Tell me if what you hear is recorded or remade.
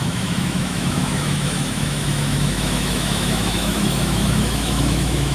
remade